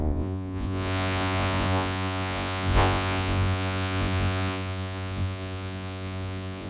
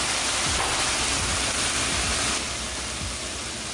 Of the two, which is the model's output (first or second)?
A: first